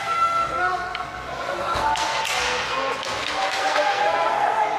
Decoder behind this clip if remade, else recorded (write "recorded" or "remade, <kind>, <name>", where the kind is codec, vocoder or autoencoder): remade, codec, SNAC